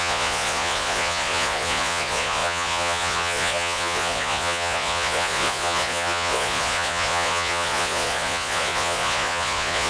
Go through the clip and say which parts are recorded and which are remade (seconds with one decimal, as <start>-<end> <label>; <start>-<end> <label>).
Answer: 0.0-9.9 remade